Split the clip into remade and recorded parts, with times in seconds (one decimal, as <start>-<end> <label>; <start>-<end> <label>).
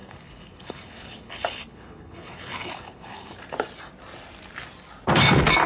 0.0-3.4 remade; 3.4-5.7 recorded